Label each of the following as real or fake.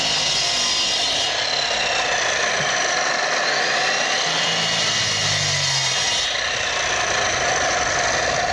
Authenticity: real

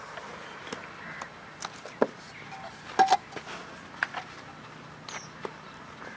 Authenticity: real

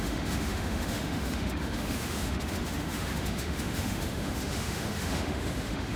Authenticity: fake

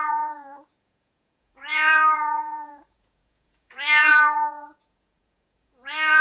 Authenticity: fake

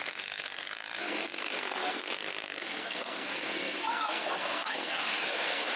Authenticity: fake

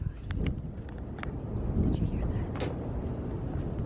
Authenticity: real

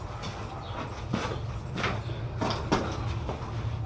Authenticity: real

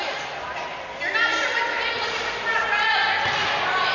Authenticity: real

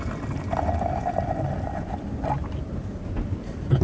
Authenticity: real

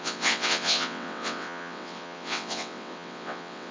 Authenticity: fake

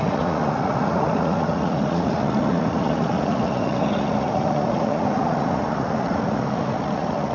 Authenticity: fake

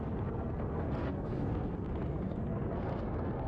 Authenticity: fake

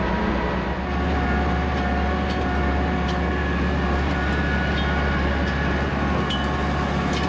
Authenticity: real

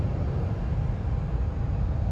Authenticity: real